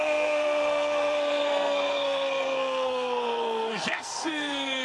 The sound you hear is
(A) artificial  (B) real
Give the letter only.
A